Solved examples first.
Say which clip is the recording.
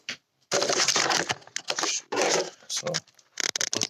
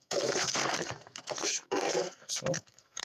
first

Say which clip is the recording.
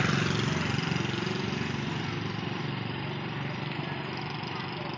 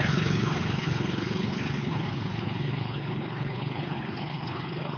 first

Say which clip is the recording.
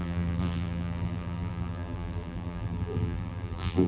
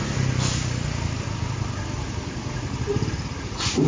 second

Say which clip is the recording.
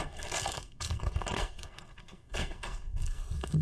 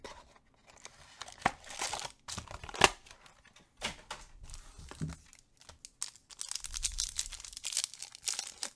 second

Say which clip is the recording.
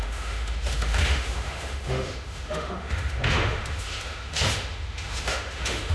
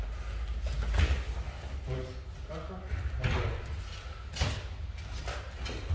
second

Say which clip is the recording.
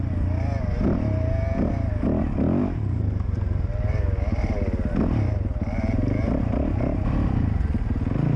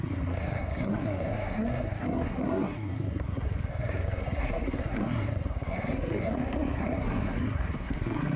first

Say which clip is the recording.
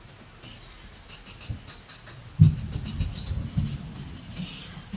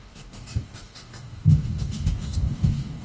first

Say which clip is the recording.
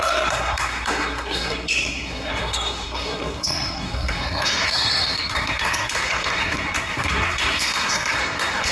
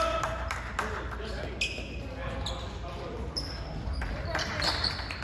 second